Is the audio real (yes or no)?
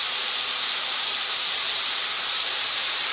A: no